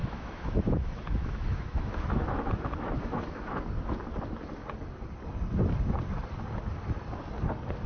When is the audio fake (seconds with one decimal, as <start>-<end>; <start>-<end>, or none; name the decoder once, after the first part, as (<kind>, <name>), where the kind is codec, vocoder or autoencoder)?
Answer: 0.0-3.6 (autoencoder, DAC-VAE)